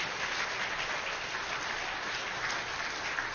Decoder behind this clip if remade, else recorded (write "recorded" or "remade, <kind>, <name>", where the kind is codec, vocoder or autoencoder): recorded